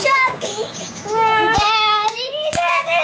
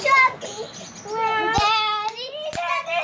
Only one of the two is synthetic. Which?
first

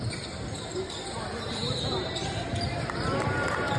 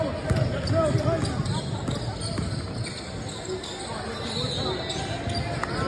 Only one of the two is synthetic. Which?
first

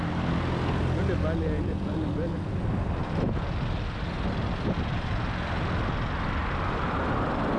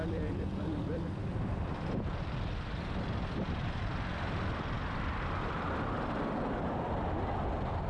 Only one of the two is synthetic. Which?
second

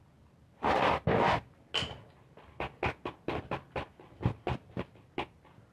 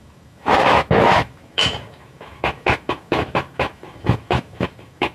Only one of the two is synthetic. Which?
second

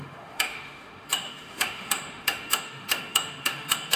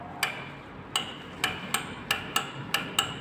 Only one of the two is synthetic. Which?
first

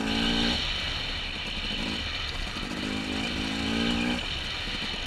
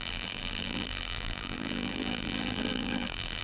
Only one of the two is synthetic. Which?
second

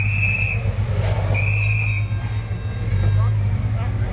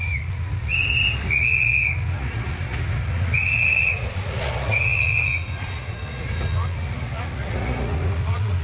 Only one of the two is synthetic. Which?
second